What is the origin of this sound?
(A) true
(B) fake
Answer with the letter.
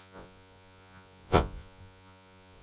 B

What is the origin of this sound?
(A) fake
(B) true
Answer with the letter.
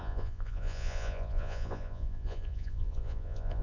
A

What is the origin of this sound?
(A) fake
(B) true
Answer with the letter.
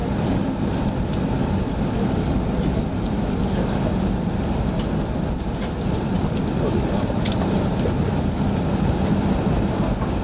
B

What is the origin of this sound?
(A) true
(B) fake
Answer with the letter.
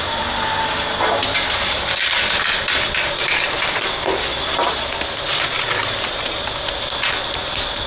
A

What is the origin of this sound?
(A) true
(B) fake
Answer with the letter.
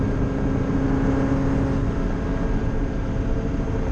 A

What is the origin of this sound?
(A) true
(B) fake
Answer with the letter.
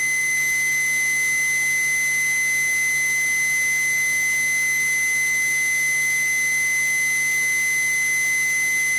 A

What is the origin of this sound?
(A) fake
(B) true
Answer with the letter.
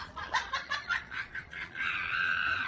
A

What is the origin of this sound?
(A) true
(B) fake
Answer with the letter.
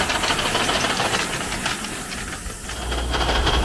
A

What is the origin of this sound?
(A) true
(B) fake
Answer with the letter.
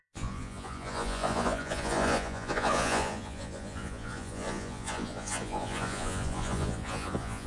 B